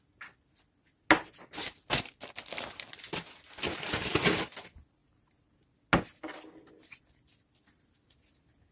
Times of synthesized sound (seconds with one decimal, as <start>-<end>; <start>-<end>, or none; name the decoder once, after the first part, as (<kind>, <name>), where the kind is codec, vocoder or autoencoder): none

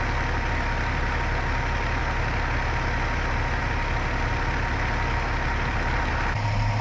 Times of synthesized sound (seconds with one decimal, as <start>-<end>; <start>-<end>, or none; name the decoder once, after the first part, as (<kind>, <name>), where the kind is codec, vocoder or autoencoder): none